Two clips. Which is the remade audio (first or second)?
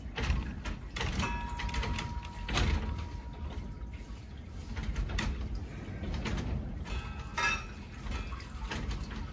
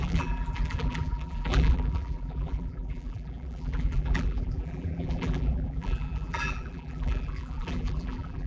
second